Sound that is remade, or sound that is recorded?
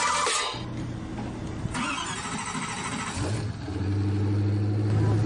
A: recorded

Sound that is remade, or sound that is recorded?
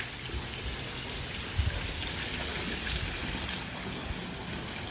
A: recorded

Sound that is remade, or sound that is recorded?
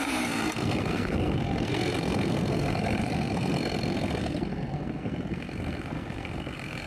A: remade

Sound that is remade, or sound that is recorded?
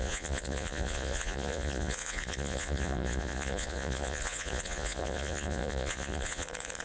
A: remade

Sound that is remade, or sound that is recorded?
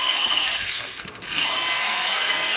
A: remade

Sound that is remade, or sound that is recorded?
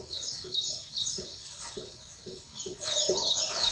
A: remade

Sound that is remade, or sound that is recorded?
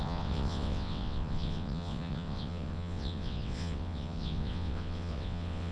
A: remade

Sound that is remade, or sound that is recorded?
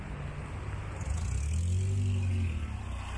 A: recorded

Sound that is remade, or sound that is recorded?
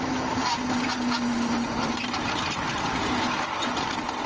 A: recorded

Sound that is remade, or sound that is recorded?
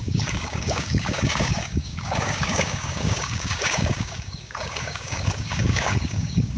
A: remade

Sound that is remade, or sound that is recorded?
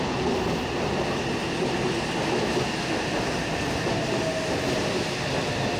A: recorded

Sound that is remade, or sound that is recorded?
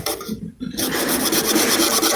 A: recorded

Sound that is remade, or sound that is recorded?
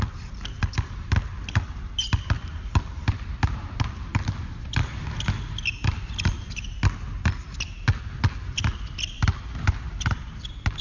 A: recorded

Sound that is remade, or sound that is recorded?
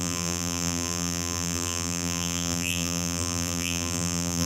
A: remade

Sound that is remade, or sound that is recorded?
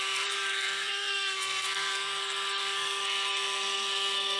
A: remade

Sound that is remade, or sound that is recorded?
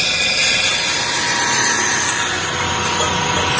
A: recorded